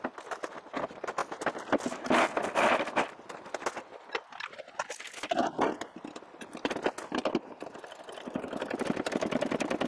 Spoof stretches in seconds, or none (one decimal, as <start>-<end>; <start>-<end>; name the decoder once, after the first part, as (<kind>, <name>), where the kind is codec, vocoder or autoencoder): 0.0-3.9 (vocoder, BigVGAN v2); 8.8-9.9